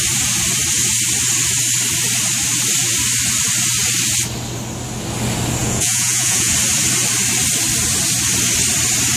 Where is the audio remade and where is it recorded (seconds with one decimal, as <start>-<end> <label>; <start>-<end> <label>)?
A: 0.0-5.6 recorded; 5.6-6.5 remade; 6.5-9.2 recorded